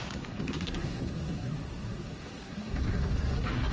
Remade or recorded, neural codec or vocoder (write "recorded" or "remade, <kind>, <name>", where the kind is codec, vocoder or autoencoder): remade, codec, SNAC